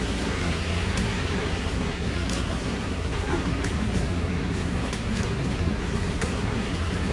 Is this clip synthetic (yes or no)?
yes